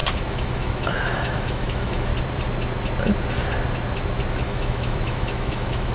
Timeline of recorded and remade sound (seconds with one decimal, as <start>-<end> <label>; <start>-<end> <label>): 0.0-2.1 remade; 2.1-4.3 recorded; 4.3-5.9 remade